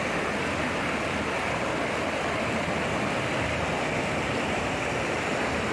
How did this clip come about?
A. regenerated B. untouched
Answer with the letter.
B